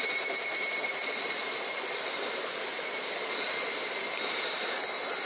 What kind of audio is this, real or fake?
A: real